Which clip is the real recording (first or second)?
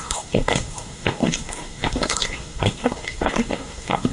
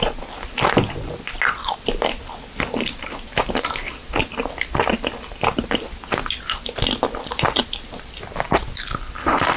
second